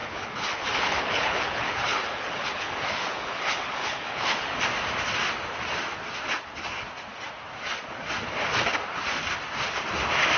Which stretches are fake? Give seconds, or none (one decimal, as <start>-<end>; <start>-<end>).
0.0-4.6